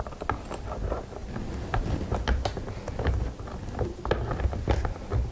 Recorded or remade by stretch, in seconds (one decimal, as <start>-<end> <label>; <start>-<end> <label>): 0.0-5.3 recorded